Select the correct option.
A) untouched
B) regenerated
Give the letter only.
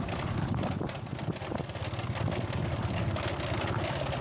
A